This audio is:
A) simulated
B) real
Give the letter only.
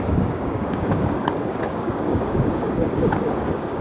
A